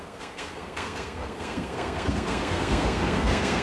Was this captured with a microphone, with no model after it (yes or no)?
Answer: no